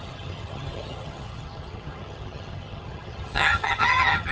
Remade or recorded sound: remade